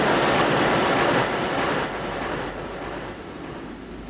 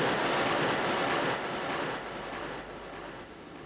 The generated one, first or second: first